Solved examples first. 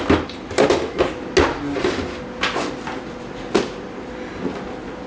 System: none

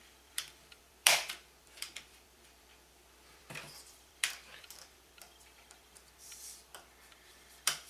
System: vocoder, BigVGAN v2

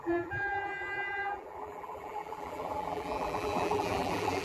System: vocoder, BigVGAN v2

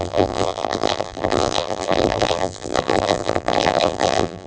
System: vocoder, BigVGAN v2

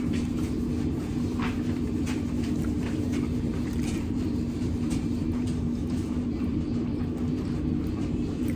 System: vocoder, BigVGAN v2